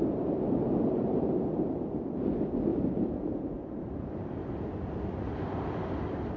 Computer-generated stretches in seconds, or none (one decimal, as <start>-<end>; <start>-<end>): 0.0-1.5; 2.7-4.5